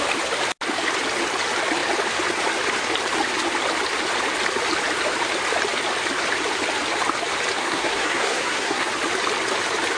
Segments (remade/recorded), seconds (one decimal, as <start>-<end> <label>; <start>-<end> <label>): 0.0-7.6 recorded; 7.6-8.9 remade; 8.9-10.0 recorded